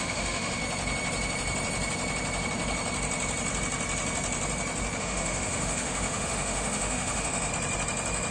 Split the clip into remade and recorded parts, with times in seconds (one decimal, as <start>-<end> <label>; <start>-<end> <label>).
0.0-0.6 remade; 0.6-5.0 recorded; 5.0-7.5 remade; 7.5-8.3 recorded